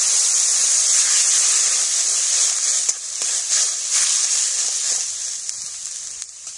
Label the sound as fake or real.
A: real